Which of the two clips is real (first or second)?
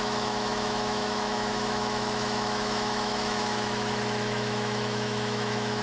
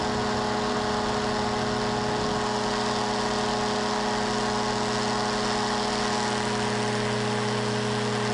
second